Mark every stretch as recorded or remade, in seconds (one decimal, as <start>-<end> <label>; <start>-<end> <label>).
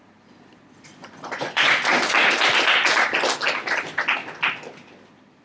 0.0-1.0 recorded; 1.0-1.7 remade; 1.7-5.4 recorded